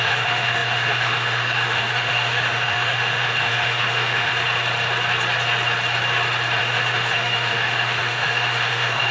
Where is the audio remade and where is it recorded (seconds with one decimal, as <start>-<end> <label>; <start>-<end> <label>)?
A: 0.0-4.3 remade; 4.3-6.6 recorded; 6.6-9.1 remade

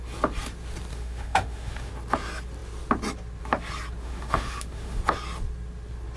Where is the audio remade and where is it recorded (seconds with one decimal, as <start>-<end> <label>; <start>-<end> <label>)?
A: 0.0-0.9 recorded; 0.9-1.9 remade; 1.9-4.0 recorded; 4.0-5.0 remade; 5.0-6.2 recorded

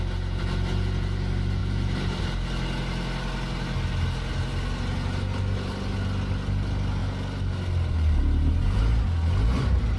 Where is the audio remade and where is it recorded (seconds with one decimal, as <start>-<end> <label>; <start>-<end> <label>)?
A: 0.0-10.0 recorded

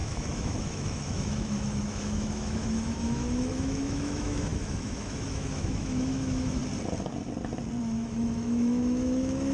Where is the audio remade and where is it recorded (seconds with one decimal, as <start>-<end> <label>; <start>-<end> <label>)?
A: 0.0-6.6 remade; 6.6-7.8 recorded; 7.8-9.5 remade

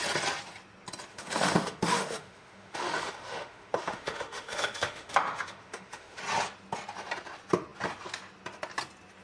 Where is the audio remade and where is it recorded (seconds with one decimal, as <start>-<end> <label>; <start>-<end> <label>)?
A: 0.0-1.1 recorded; 1.1-6.2 remade; 6.2-9.2 recorded